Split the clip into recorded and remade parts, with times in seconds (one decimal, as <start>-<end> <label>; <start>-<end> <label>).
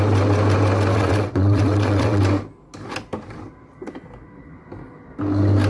0.0-0.9 recorded; 0.9-2.2 remade; 2.2-5.7 recorded